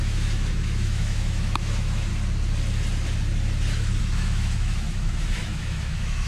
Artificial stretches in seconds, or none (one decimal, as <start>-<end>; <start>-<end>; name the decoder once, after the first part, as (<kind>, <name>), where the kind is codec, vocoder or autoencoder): 0.0-2.1 (autoencoder, DAC-VAE); 4.0-6.3

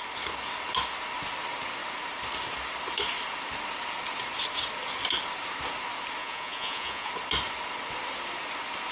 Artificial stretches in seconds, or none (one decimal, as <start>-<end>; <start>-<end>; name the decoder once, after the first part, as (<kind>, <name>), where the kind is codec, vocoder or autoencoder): 6.2-7.1 (vocoder, Vocos)

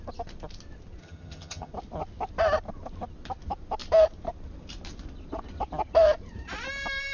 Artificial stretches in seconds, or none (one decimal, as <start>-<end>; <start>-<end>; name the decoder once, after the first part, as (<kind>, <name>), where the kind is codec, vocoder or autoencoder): 1.0-1.7 (vocoder, HiFi-GAN)

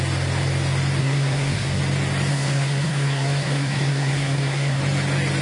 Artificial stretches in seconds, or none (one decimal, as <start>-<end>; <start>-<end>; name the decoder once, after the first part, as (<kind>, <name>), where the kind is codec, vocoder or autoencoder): 1.0-1.8 (codec, SNAC); 2.3-4.8